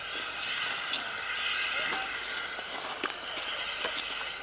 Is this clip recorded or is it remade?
recorded